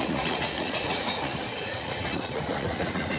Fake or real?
fake